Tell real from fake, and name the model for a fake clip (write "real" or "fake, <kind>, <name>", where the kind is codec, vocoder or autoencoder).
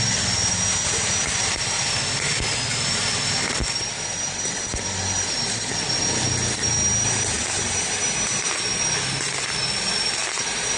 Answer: real